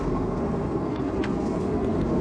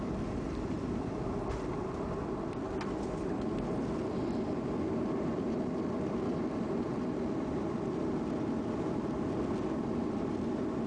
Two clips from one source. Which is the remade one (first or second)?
first